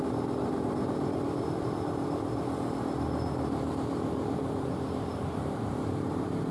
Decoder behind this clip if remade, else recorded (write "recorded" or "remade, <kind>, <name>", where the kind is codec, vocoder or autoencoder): remade, vocoder, BigVGAN v2